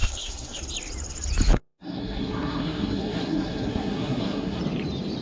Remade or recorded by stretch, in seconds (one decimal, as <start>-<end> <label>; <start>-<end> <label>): 0.0-0.6 remade; 0.6-1.5 recorded; 1.5-4.6 remade; 4.6-5.2 recorded